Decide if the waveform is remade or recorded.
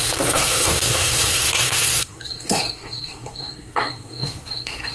remade